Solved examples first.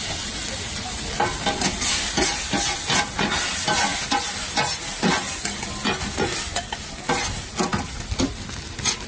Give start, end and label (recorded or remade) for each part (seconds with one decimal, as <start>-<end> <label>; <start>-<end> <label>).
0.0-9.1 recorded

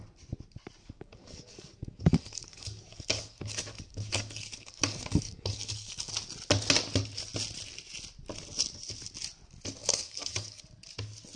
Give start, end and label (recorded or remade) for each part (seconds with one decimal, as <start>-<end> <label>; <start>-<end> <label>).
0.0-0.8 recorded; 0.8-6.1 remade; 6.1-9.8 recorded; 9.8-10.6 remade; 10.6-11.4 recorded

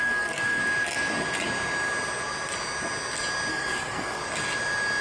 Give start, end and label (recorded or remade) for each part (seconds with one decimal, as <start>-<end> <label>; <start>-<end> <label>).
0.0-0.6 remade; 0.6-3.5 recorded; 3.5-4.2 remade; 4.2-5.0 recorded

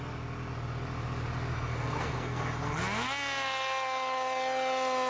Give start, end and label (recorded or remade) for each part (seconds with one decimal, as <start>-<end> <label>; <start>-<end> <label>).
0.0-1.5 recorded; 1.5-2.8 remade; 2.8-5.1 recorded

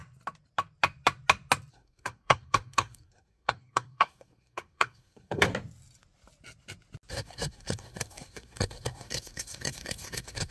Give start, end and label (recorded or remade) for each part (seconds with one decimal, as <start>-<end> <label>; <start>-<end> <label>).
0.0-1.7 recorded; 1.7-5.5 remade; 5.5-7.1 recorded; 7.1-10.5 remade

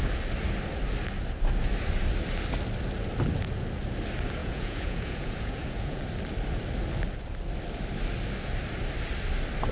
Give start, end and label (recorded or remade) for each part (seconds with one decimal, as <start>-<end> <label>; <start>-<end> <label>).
0.0-4.4 recorded; 4.4-6.0 remade; 6.0-9.7 recorded

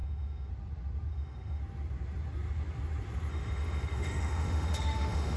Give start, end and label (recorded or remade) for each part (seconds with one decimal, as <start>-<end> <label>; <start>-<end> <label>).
0.0-0.5 remade; 0.5-1.1 recorded; 1.1-1.6 remade; 1.6-3.3 recorded; 3.3-5.4 remade

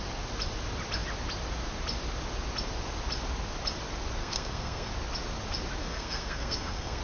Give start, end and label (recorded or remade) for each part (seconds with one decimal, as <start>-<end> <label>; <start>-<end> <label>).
0.0-4.2 recorded; 4.2-4.9 remade; 4.9-5.8 recorded; 5.8-7.0 remade